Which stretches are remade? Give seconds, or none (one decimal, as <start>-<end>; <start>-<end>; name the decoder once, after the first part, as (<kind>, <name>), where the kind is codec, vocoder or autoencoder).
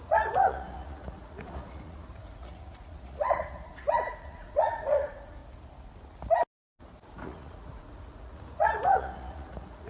0.0-5.4 (vocoder, Vocos); 7.2-9.9